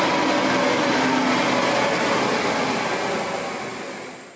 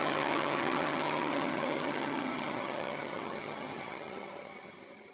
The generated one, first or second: second